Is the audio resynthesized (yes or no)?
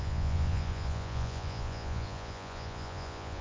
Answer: yes